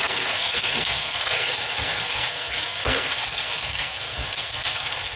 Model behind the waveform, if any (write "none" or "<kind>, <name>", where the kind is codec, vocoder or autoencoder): codec, SNAC